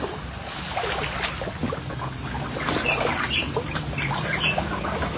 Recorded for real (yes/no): yes